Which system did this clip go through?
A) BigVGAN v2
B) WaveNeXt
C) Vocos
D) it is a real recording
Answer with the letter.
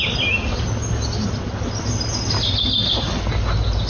D